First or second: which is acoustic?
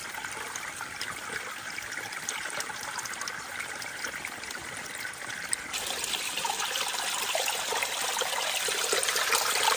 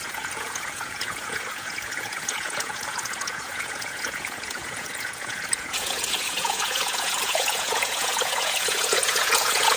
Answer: first